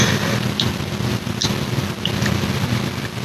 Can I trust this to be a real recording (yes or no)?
yes